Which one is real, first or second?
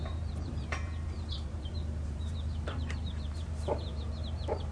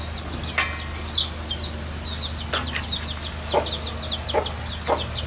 second